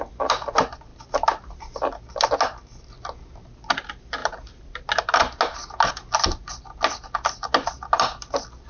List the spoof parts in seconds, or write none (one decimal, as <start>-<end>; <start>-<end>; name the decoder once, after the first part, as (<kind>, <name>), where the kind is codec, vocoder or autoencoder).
none

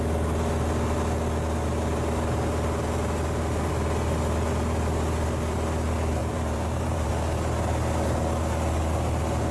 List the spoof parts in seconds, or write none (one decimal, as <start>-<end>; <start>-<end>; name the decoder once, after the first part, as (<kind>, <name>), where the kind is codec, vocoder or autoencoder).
6.2-7.1 (vocoder, BigVGAN v2)

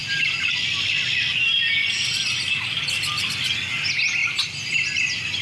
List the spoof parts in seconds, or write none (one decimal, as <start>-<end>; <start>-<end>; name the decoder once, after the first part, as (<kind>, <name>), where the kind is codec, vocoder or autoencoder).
0.0-0.5 (vocoder, BigVGAN v2)

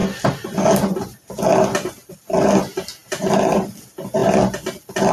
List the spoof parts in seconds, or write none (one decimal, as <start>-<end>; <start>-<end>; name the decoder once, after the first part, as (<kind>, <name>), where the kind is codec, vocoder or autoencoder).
none

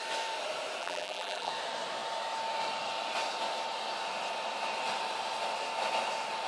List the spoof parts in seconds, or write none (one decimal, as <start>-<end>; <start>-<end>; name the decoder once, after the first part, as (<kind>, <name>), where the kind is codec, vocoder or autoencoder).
0.8-1.5 (vocoder, BigVGAN v2)

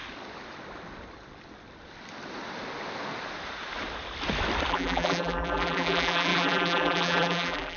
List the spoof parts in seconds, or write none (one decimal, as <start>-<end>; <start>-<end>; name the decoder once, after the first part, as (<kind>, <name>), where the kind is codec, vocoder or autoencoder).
4.7-7.8 (vocoder, BigVGAN v2)

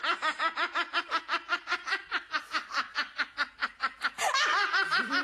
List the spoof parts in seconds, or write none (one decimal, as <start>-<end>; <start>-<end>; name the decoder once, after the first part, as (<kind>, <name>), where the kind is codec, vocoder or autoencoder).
0.9-4.0 (vocoder, BigVGAN v2)

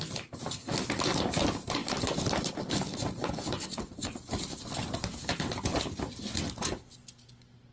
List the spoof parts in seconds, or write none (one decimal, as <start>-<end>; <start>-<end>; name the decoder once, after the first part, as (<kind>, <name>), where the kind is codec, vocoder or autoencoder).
none